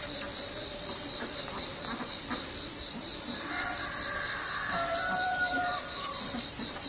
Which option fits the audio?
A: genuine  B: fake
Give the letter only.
B